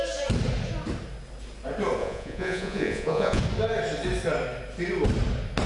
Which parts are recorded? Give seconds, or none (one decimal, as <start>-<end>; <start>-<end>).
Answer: 0.0-2.0; 3.4-5.7